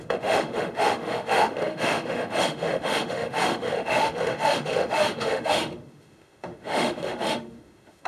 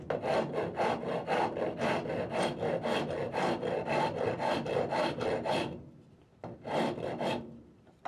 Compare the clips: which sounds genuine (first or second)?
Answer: second